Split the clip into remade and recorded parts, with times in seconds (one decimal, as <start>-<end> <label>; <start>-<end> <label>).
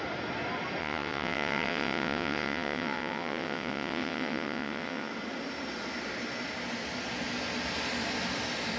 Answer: 0.0-0.8 recorded; 0.8-5.1 remade; 5.1-8.8 recorded